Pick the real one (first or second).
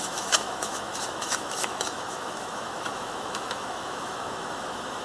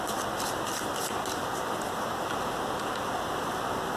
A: second